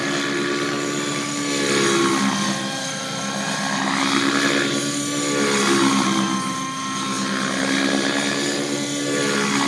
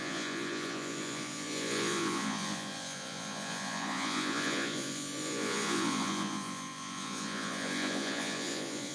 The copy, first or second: second